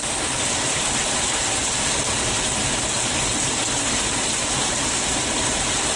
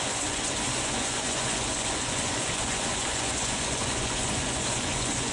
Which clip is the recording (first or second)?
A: first